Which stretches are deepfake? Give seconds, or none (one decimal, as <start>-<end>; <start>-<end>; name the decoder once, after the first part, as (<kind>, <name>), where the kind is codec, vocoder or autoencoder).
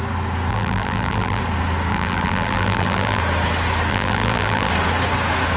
0.5-1.4 (vocoder, BigVGAN v2); 1.9-3.2; 3.9-4.7